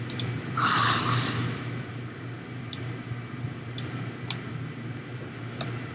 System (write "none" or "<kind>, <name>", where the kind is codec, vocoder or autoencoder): vocoder, BigVGAN v2